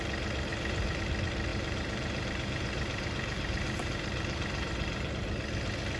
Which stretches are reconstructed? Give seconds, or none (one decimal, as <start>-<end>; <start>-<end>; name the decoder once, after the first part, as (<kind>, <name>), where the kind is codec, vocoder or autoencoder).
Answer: 0.5-1.0 (vocoder, BigVGAN v2); 1.5-5.1

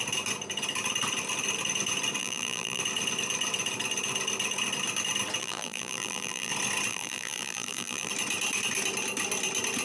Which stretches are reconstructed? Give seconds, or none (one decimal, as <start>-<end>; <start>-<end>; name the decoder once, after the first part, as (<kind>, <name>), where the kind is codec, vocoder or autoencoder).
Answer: 2.2-2.8 (vocoder, BigVGAN v2); 5.4-6.5; 6.9-8.1

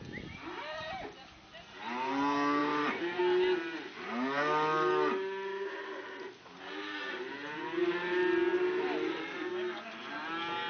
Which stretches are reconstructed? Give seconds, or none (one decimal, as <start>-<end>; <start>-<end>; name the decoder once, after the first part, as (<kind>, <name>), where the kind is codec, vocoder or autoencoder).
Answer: 2.6-3.2 (vocoder, BigVGAN v2)

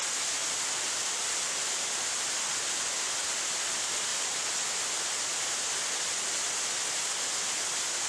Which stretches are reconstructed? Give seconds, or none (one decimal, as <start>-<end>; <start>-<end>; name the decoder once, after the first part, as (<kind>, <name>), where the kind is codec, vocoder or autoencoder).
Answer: 4.1-4.7 (vocoder, BigVGAN v2)

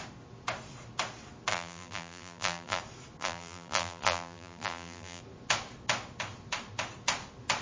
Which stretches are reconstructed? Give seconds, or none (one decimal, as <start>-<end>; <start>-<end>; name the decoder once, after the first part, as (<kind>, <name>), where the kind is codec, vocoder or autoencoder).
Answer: 1.5-2.8 (vocoder, BigVGAN v2); 3.2-5.2

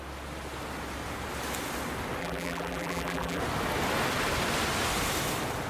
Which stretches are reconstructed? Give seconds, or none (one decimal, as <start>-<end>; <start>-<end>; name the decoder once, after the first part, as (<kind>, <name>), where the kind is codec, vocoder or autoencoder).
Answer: 2.2-3.4 (vocoder, BigVGAN v2)

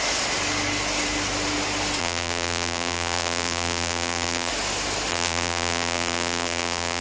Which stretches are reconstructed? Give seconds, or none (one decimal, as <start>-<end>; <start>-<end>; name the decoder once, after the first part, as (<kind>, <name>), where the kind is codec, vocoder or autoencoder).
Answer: 2.0-4.5 (vocoder, BigVGAN v2); 5.1-7.0

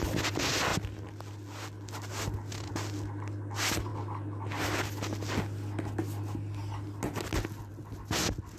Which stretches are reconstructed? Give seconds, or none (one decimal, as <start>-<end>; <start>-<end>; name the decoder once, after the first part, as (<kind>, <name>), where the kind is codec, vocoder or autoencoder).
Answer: none